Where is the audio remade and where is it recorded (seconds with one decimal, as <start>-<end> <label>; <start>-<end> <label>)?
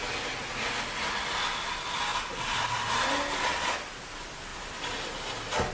0.0-2.1 recorded; 2.1-2.7 remade; 2.7-5.7 recorded